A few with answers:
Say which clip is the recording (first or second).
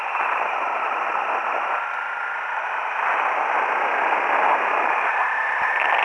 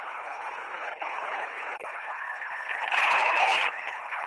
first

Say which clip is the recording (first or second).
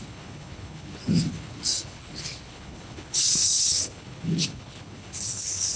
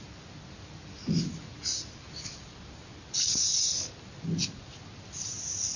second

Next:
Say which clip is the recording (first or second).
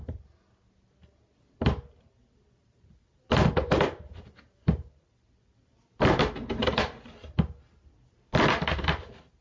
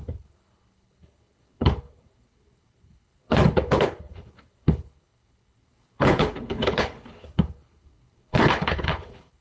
first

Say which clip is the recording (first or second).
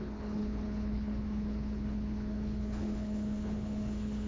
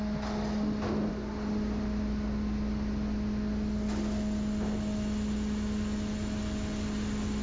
second